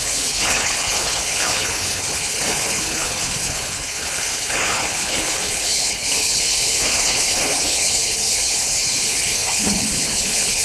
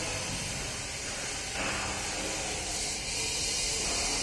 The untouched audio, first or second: second